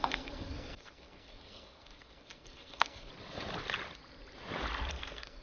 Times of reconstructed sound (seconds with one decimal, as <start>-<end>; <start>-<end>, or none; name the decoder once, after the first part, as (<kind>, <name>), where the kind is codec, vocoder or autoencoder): 0.0-3.1 (codec, SNAC); 4.9-5.4